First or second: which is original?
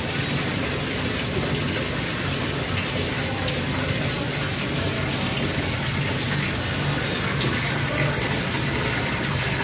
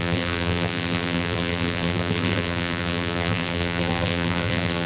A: first